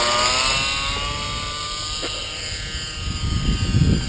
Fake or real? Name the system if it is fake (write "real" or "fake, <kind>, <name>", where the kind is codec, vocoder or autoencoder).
real